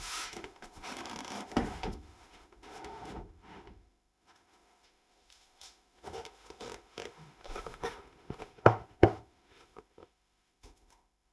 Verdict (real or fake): fake